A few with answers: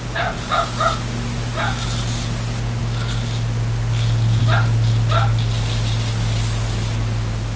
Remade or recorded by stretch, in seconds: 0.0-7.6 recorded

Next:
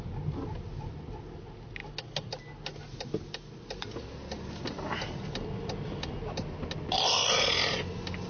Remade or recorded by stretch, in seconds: 0.0-8.3 recorded

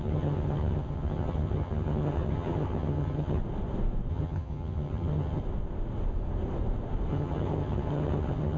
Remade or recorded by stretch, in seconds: 0.0-3.4 remade; 3.4-4.1 recorded; 4.1-5.4 remade; 5.4-7.1 recorded; 7.1-8.6 remade